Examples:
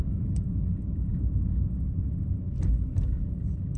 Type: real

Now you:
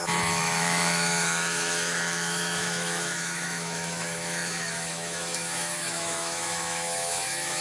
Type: fake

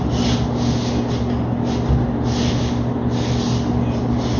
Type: real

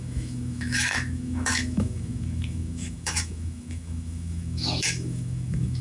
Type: fake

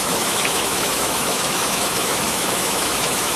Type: fake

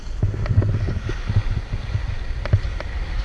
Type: real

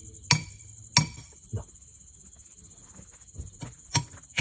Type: real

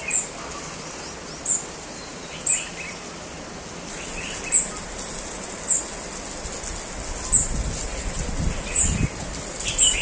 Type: real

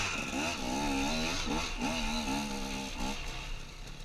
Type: real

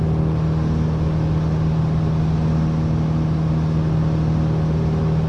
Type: real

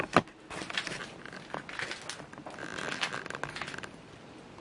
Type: real